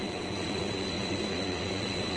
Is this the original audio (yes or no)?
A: no